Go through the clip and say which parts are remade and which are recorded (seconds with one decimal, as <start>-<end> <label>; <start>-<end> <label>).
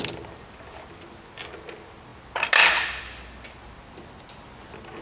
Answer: 0.0-5.0 recorded